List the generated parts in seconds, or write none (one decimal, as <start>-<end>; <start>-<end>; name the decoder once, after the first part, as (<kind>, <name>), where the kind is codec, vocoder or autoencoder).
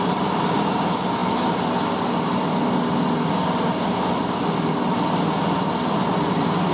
none